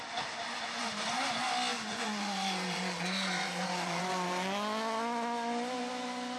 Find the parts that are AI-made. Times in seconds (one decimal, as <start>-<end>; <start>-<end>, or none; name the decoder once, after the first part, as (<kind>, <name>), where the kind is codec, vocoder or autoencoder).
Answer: 1.9-4.0 (vocoder, Vocos)